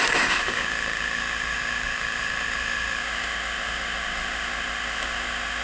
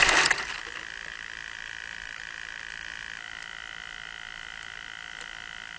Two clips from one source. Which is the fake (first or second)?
first